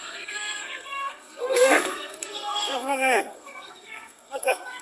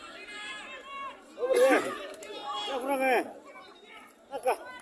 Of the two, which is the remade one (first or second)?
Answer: first